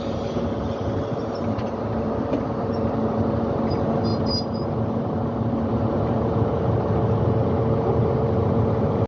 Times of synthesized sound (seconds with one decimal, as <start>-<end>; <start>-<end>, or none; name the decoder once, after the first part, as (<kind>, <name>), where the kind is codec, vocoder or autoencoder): 0.0-9.1 (vocoder, BigVGAN v2)